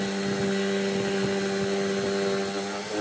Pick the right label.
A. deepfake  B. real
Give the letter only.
B